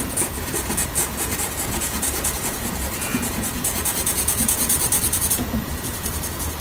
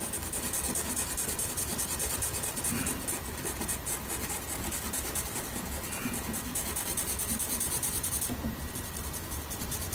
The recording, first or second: second